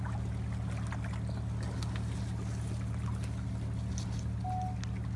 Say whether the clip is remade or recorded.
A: recorded